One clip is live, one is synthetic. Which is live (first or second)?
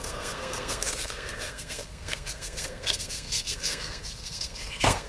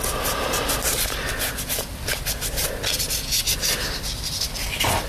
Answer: second